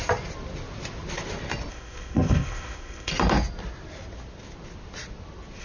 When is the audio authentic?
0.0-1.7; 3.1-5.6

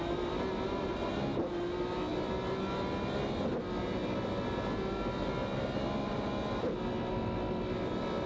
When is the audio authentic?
0.0-8.3

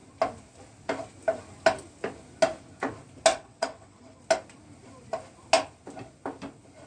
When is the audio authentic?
0.0-3.3; 4.2-6.9

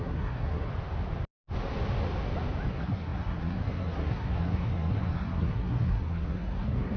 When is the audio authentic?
0.7-2.7

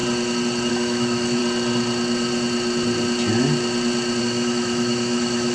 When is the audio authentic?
0.0-0.7; 1.4-4.2